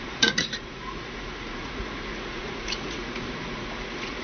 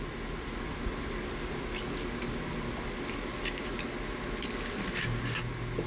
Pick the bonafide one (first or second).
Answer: second